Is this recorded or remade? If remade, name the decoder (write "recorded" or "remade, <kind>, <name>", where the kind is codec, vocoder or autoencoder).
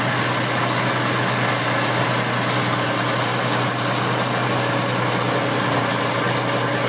recorded